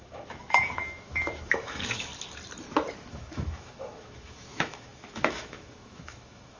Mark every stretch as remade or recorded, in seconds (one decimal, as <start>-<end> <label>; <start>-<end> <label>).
0.0-2.1 remade; 2.1-3.1 recorded; 3.1-6.6 remade

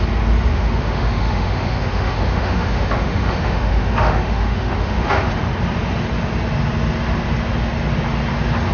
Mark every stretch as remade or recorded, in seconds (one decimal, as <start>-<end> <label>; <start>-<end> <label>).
0.0-0.5 recorded; 0.5-5.3 remade; 5.3-8.7 recorded